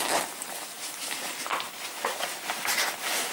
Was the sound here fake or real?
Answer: fake